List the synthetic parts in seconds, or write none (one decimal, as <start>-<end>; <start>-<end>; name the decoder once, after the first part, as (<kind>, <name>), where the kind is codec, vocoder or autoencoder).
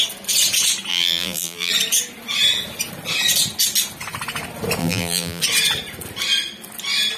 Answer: 0.9-1.7 (vocoder, BigVGAN v2); 4.8-5.4